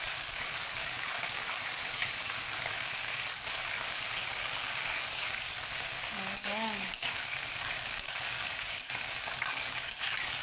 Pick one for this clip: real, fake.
fake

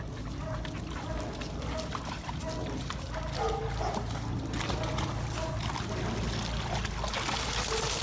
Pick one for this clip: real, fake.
real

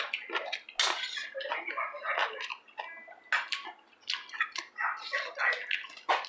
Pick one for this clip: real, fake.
real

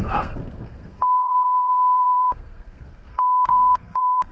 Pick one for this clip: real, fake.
fake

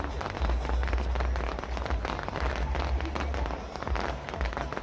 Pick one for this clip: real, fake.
real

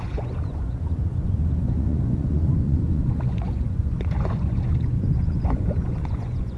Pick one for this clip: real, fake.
fake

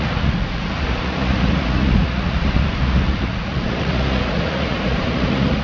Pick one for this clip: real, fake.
fake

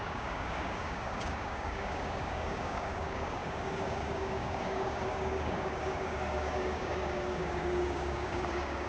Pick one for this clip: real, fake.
fake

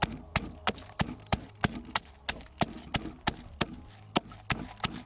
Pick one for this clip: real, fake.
real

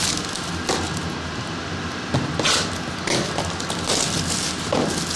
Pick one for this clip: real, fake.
real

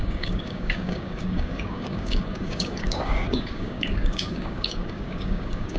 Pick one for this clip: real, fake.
fake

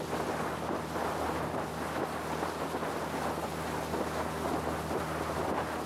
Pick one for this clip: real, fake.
real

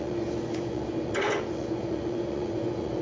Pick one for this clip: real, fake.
fake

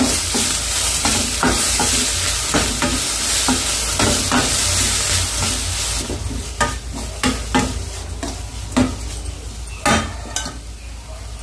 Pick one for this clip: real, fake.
real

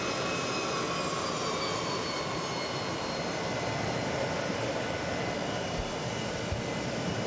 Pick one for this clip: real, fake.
real